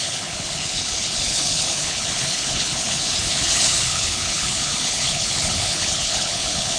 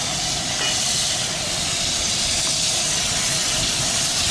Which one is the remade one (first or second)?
first